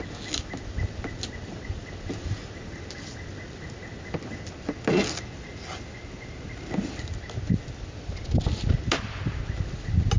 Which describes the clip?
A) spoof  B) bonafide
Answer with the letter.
B